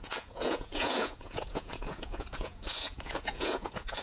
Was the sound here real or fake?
fake